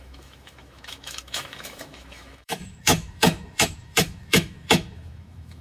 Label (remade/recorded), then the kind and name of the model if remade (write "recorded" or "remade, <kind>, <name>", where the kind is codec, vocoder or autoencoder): remade, autoencoder, DAC-VAE